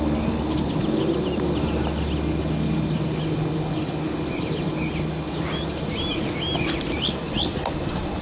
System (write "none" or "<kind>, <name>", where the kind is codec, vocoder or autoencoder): none